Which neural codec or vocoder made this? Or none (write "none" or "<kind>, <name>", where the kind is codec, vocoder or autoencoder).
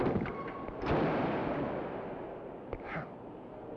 none